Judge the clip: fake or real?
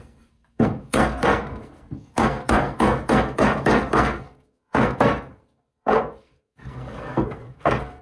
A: fake